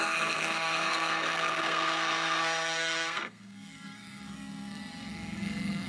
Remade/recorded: remade